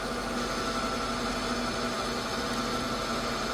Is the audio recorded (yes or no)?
yes